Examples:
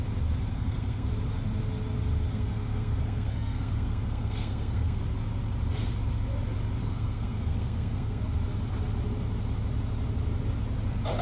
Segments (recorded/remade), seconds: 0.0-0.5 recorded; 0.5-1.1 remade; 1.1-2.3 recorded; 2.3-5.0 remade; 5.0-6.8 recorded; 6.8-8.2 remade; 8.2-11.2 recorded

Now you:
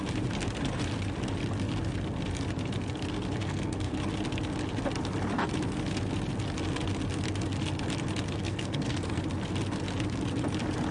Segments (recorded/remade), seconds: 0.0-3.4 recorded; 3.4-3.9 remade; 3.9-8.4 recorded; 8.4-9.2 remade; 9.2-10.9 recorded

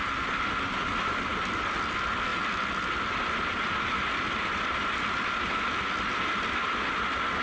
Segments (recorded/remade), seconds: 0.0-7.4 recorded